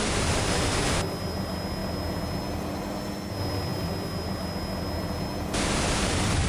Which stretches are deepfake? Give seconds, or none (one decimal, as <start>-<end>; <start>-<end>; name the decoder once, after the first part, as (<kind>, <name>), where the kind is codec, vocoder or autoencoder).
none